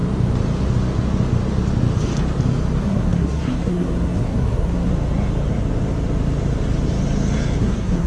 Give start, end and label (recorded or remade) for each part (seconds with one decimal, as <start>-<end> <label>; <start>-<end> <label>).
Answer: 0.0-2.8 recorded; 2.8-4.9 remade; 4.9-7.6 recorded; 7.6-8.1 remade